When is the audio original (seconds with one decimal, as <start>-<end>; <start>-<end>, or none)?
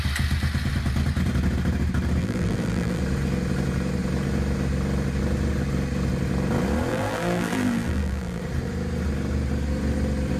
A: 0.0-2.2; 3.0-6.9; 8.4-10.4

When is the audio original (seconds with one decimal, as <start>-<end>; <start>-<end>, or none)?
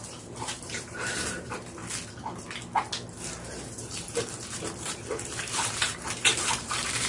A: 1.8-3.3